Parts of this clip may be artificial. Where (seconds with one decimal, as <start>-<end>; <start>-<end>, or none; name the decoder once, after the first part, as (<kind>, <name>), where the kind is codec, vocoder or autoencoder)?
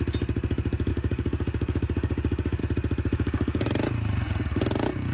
0.9-2.6 (codec, DAC); 3.1-3.7